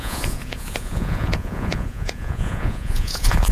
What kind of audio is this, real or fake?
fake